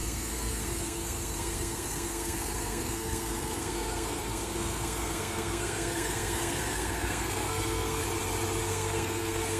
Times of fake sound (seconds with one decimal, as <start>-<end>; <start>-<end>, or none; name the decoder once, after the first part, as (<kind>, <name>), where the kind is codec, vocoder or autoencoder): 0.0-8.0 (codec, SNAC); 8.6-9.6